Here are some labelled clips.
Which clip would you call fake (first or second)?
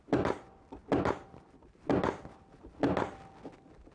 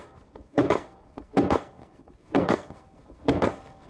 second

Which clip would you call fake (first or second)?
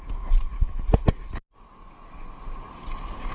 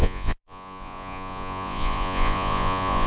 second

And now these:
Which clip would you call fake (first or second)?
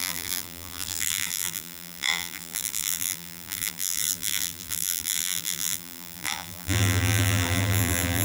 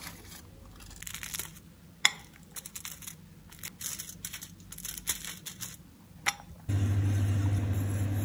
first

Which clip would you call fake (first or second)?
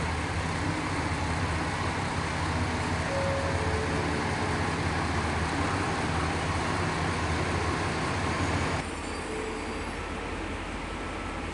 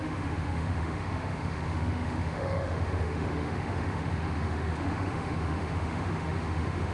second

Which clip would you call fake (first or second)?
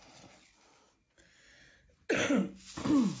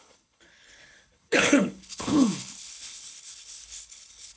second